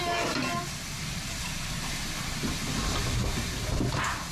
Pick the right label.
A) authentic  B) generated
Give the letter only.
A